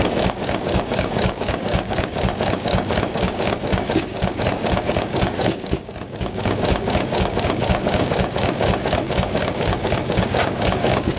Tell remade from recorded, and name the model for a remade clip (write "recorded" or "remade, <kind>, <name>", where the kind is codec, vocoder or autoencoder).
remade, codec, DAC